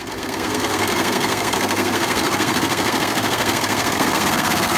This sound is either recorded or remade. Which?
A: remade